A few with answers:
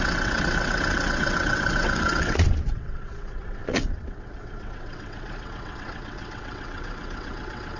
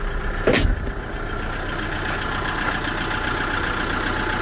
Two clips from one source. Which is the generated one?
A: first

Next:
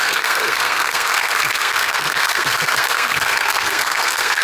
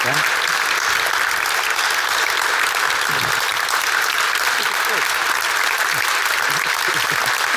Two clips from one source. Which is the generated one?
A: first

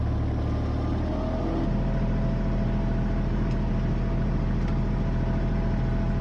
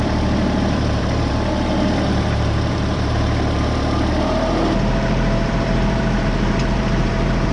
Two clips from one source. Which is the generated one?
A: second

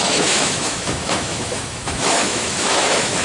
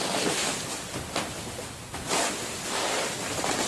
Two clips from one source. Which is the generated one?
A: first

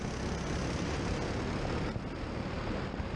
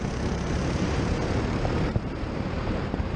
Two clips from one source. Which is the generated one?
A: second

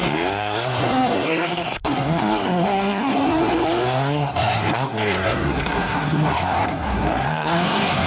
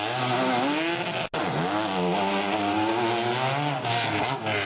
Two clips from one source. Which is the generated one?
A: first